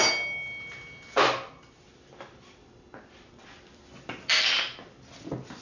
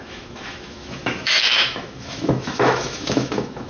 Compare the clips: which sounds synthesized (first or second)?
second